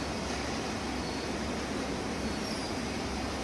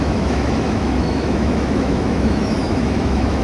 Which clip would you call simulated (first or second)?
second